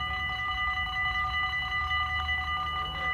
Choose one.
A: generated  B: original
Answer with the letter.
B